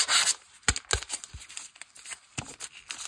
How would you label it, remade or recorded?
recorded